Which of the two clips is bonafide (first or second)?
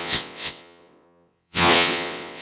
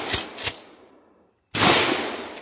second